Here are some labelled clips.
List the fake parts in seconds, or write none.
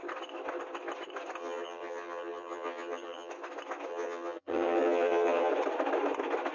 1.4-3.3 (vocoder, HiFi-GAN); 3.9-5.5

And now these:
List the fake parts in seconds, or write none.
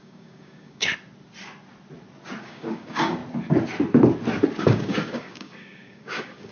0.0-0.9 (codec, DAC); 2.4-3.2; 4.6-6.5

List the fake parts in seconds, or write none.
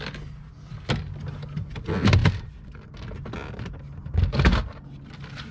none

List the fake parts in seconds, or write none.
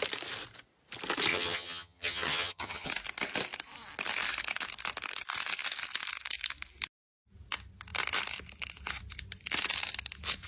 1.3-2.9 (vocoder, HiFi-GAN)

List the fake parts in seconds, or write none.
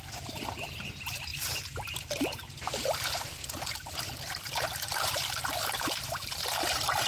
none